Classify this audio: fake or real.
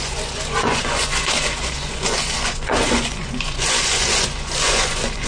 fake